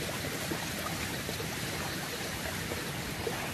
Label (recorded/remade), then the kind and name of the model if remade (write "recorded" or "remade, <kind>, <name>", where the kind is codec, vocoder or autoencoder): recorded